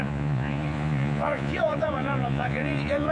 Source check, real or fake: fake